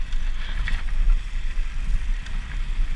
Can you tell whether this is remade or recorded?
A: recorded